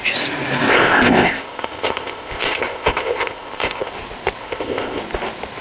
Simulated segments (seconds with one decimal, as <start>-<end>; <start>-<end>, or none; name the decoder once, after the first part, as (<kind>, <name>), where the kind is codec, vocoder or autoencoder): 0.7-3.9 (codec, ZipCodec); 4.4-5.0